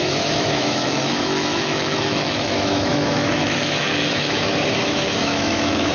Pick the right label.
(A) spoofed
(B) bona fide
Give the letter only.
A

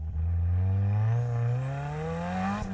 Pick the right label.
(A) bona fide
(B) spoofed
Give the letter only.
A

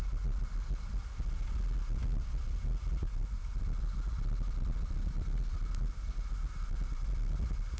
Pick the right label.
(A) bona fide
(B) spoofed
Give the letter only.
A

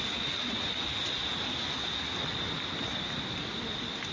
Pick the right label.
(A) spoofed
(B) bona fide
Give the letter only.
B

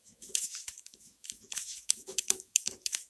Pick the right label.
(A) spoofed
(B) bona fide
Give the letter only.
A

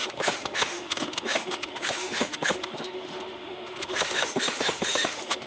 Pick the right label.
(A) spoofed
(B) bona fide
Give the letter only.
A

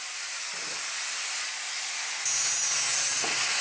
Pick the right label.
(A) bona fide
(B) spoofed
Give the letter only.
A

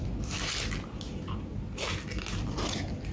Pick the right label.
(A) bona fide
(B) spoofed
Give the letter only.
A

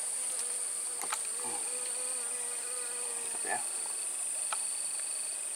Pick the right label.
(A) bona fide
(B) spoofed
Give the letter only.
A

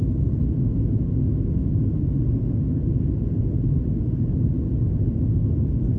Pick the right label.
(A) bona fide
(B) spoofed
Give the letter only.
A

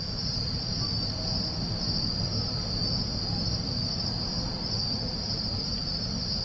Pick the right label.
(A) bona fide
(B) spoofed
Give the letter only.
A